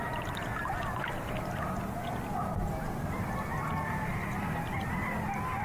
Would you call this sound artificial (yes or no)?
no